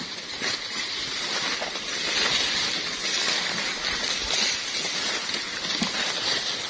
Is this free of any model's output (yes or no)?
yes